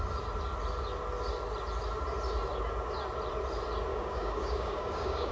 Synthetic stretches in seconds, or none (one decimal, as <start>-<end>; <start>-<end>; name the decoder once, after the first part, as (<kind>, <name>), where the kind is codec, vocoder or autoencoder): 3.9-5.3 (codec, DAC)